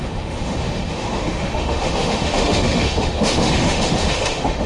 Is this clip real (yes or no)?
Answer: no